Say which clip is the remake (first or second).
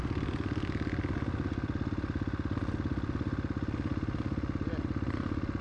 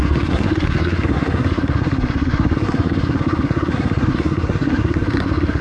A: second